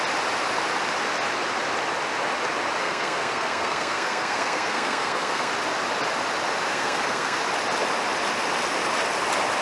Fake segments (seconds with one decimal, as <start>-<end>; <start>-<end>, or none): 2.8-5.5; 6.7-7.4